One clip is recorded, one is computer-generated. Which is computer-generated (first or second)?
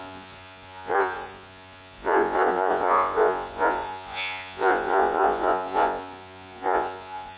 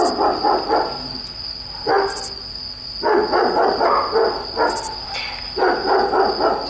first